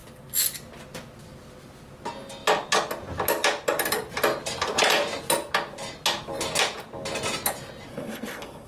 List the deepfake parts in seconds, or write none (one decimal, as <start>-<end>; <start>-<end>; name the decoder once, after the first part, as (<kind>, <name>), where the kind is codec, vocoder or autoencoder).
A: 7.9-8.7 (codec, SNAC)

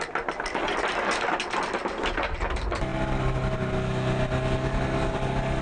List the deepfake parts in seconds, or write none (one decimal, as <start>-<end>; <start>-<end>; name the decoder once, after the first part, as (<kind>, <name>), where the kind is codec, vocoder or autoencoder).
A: none

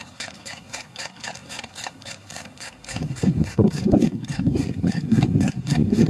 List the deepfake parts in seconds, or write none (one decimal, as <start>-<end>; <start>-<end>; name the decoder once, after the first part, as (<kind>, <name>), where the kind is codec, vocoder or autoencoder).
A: 0.0-6.1 (codec, SNAC)

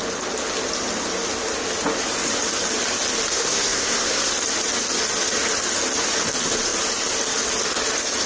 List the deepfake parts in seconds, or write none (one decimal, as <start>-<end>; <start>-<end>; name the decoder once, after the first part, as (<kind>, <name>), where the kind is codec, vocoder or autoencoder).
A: 3.3-4.3 (codec, SNAC)

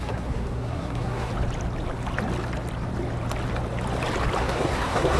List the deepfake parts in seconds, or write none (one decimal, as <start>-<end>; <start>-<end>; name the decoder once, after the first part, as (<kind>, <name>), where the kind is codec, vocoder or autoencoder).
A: 0.0-1.3 (codec, SNAC); 4.4-5.2

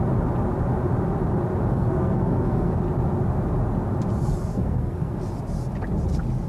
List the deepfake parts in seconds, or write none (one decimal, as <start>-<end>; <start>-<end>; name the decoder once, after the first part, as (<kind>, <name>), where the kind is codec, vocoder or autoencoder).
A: 1.7-2.8 (codec, SNAC); 4.5-5.2

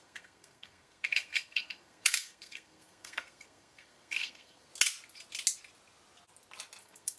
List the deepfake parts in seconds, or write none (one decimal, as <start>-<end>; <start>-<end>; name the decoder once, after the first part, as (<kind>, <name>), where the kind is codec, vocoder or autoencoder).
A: 0.0-4.7 (codec, SNAC); 6.8-7.2

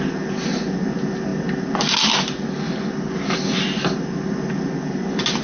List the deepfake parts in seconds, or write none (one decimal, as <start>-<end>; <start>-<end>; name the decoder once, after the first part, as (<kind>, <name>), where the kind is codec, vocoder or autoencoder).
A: none